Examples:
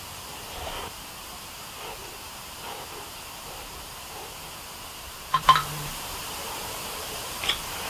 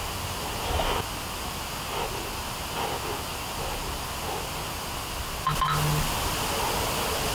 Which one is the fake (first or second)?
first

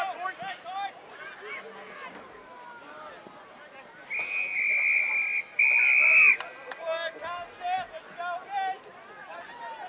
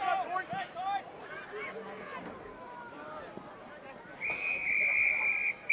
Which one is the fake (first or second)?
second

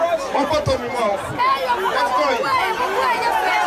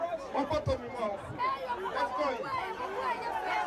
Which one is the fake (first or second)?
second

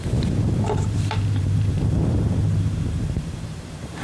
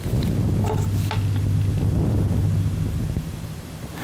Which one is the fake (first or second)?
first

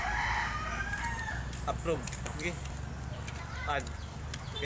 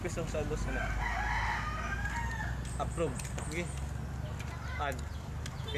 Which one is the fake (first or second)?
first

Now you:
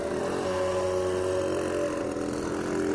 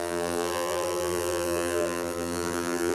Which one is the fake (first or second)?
second